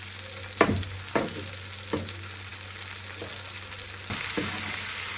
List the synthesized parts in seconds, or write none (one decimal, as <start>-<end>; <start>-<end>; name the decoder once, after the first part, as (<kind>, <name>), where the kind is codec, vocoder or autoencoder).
none